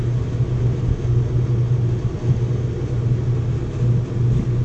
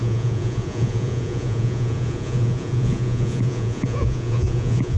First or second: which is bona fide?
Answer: first